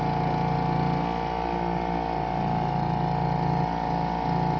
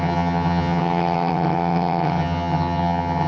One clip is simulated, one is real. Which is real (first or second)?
first